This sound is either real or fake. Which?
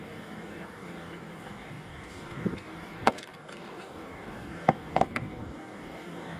fake